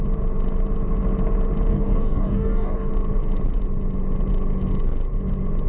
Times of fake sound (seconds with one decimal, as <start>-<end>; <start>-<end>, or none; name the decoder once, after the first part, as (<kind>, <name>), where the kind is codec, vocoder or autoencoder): 1.7-2.9 (codec, DAC)